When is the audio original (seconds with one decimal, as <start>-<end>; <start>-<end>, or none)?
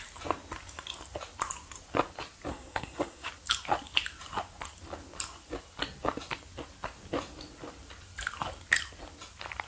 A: 0.0-2.5; 3.3-9.7